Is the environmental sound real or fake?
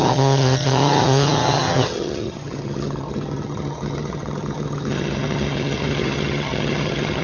fake